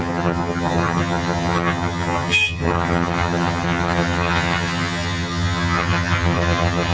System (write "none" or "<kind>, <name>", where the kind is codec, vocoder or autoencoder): vocoder, HiFi-GAN